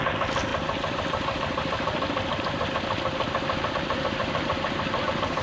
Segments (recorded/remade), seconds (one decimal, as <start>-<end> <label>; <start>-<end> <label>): 0.0-0.5 recorded; 0.5-3.7 remade; 3.7-4.2 recorded; 4.2-5.0 remade; 5.0-5.4 recorded